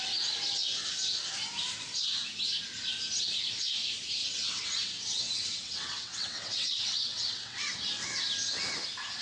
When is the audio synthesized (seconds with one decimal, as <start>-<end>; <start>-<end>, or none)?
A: 4.2-7.6